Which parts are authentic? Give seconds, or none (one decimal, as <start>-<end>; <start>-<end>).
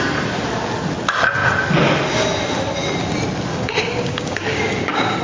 0.0-3.5